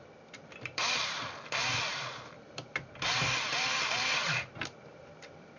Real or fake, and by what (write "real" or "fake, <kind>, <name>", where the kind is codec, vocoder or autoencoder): fake, vocoder, BigVGAN v2